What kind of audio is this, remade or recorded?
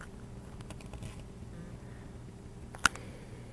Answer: remade